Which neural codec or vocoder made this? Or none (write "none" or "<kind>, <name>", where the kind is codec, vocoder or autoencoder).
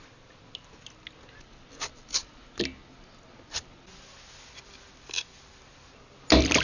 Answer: none